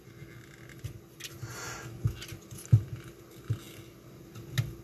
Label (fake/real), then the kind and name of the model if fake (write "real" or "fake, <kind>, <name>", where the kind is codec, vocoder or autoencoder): real